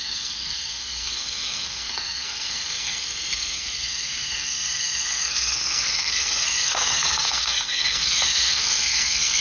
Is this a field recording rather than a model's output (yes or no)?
no